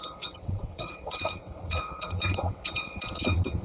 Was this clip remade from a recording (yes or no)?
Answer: yes